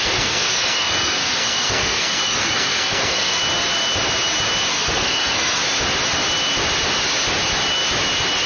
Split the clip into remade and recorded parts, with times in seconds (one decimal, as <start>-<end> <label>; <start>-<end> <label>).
0.0-3.4 remade; 3.4-4.7 recorded; 4.7-5.6 remade; 5.6-8.5 recorded

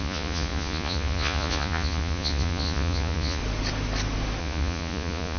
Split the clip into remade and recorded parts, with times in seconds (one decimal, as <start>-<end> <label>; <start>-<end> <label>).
0.0-3.4 remade; 3.4-4.4 recorded; 4.4-5.4 remade

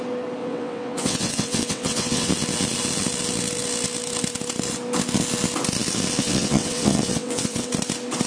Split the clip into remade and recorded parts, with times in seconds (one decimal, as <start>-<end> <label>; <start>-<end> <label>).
0.0-0.4 recorded; 0.4-2.3 remade; 2.3-6.2 recorded; 6.2-7.7 remade; 7.7-8.3 recorded

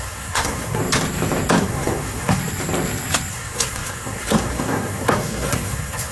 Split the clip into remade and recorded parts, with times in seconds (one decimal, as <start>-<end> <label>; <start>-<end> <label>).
0.0-0.8 remade; 0.8-1.6 recorded; 1.6-2.4 remade; 2.4-3.3 recorded; 3.3-6.1 remade

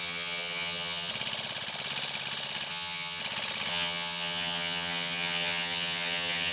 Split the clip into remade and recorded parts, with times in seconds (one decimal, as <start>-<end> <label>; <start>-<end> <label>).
0.0-1.1 remade; 1.1-2.7 recorded; 2.7-3.2 remade; 3.2-3.7 recorded; 3.7-6.5 remade